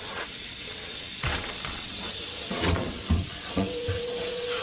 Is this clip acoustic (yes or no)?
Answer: no